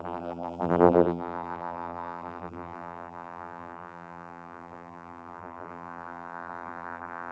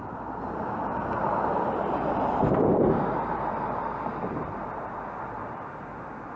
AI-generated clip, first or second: first